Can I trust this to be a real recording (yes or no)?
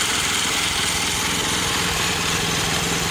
no